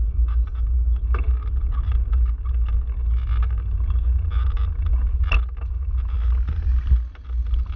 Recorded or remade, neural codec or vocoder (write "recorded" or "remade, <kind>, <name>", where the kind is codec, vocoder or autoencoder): recorded